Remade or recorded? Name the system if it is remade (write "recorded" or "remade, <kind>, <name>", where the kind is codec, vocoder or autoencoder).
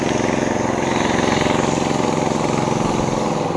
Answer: recorded